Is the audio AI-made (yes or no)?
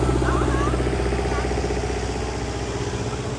no